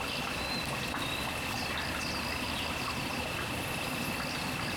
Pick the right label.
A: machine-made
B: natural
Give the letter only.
B